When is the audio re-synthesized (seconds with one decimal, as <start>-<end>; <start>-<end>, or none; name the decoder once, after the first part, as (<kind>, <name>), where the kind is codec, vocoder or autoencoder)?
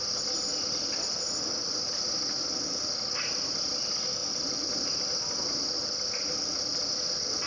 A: none